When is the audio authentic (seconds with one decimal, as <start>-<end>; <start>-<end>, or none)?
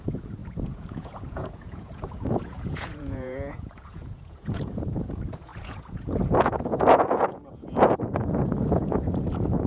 none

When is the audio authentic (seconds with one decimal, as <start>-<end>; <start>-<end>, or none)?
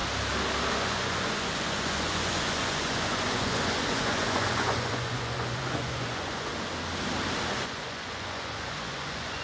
0.0-0.7; 6.5-7.5